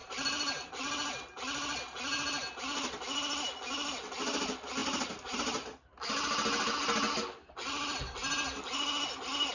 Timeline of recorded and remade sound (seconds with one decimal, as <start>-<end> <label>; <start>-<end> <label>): 0.0-0.7 remade; 0.7-4.8 recorded; 4.8-6.0 remade; 6.0-9.5 recorded